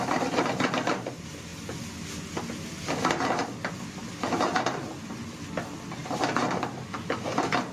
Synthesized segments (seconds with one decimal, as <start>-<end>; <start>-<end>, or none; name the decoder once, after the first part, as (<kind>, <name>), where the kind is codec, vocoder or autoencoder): none